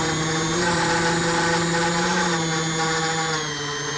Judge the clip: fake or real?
real